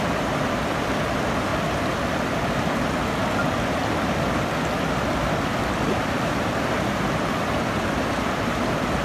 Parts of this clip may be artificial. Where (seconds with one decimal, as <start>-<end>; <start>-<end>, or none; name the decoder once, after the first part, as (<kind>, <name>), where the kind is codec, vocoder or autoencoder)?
0.0-1.5 (vocoder, BigVGAN v2); 2.5-3.2; 5.9-9.0